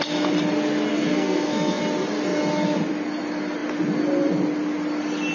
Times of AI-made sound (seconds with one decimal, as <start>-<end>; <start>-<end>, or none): 0.9-1.8